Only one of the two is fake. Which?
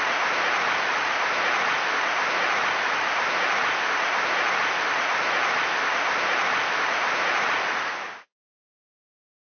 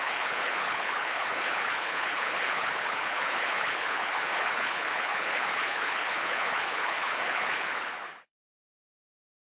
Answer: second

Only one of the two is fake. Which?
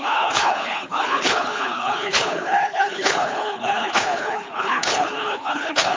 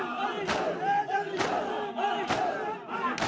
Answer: first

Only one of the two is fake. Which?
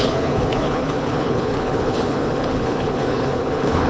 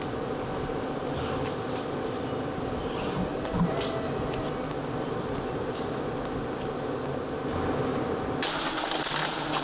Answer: first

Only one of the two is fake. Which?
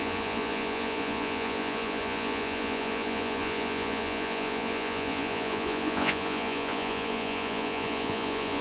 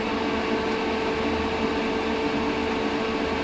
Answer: first